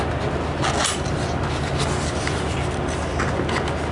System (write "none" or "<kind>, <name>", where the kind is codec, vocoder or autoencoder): none